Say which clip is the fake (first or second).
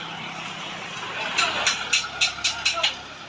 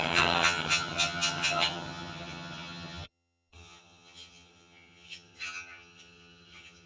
second